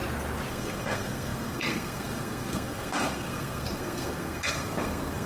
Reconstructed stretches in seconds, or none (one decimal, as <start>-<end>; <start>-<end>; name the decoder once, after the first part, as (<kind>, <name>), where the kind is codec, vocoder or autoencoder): 0.5-5.3 (codec, SNAC)